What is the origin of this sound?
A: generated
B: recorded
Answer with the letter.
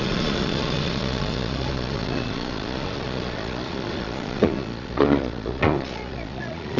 A